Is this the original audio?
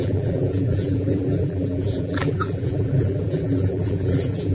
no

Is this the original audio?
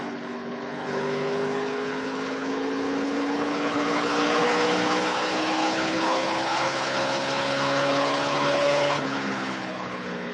no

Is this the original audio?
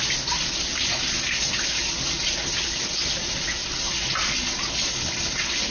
yes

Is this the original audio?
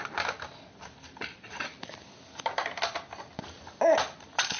yes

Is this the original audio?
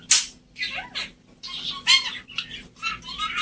yes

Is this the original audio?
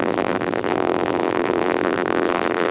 no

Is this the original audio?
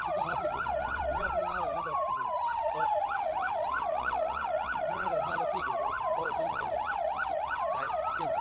no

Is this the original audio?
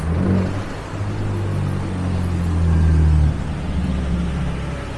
yes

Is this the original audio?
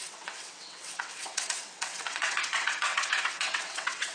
no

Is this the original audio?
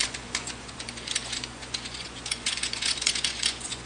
no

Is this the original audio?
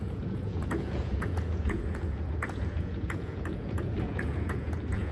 no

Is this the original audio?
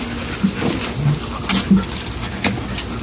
yes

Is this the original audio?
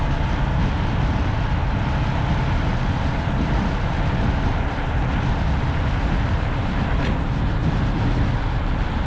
yes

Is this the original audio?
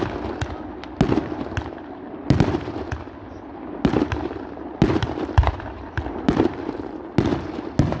yes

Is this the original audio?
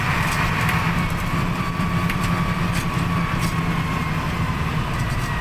no